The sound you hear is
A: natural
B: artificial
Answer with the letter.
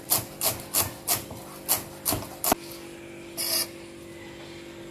A